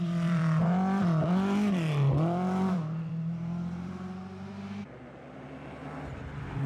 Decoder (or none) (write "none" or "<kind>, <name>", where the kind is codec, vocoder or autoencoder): vocoder, BigVGAN v2